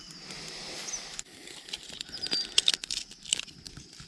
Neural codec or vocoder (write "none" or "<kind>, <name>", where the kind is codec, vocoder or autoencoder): none